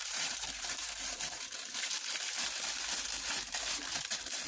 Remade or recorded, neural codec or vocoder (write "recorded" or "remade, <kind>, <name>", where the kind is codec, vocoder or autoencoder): remade, vocoder, BigVGAN v2